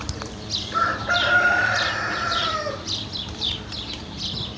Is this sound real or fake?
fake